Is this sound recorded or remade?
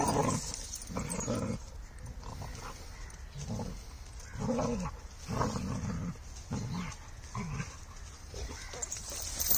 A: recorded